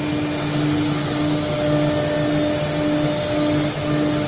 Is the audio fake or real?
real